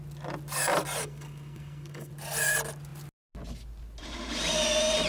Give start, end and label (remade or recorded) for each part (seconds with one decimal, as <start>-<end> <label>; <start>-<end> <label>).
0.0-1.0 recorded; 1.0-2.1 remade; 2.1-5.1 recorded